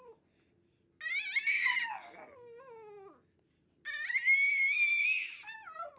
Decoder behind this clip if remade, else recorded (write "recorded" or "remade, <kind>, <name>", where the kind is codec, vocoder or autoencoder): recorded